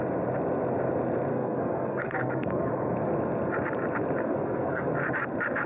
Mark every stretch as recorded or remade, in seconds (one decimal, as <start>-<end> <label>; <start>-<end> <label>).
0.0-1.3 recorded; 1.3-2.7 remade; 2.7-4.2 recorded; 4.2-4.9 remade; 4.9-5.7 recorded